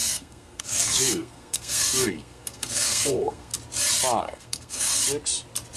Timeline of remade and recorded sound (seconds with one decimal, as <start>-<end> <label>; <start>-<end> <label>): 0.0-3.5 remade; 3.5-4.2 recorded; 4.2-5.0 remade; 5.0-5.8 recorded